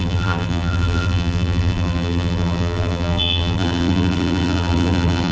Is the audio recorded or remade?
remade